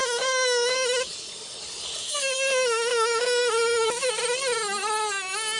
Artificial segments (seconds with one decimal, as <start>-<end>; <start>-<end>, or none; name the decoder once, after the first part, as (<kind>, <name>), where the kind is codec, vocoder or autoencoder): 0.0-1.1 (autoencoder, DAC-VAE); 2.0-4.1